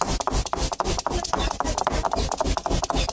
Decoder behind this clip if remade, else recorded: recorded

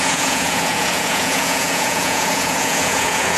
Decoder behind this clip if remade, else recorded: remade, vocoder, Vocos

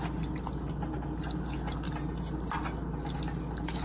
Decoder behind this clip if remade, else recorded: recorded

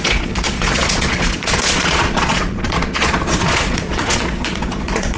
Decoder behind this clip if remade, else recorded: remade, vocoder, Vocos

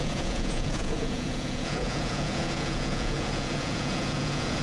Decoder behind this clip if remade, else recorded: remade, vocoder, Vocos